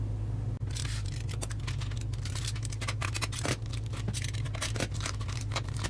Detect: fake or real real